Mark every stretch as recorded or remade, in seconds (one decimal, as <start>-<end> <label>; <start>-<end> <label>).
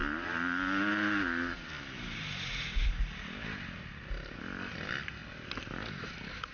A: 0.0-6.5 recorded